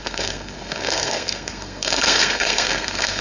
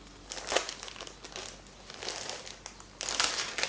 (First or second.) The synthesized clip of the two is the first